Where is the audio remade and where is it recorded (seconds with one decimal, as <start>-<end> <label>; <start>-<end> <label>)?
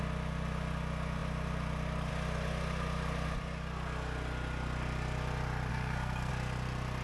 0.0-5.7 recorded; 5.7-6.3 remade; 6.3-7.0 recorded